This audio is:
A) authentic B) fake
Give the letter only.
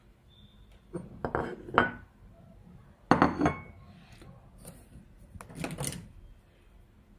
A